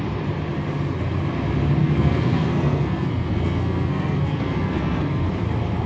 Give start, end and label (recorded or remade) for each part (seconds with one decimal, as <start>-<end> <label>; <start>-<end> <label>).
0.0-1.8 recorded; 1.8-5.3 remade; 5.3-5.9 recorded